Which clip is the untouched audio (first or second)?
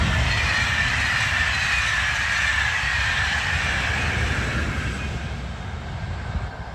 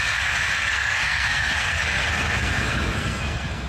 first